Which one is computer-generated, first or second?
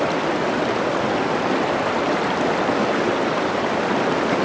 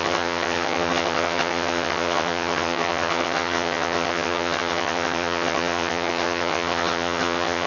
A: second